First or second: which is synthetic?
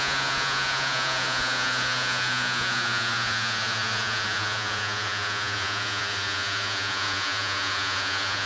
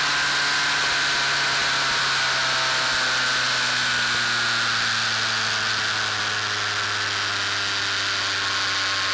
first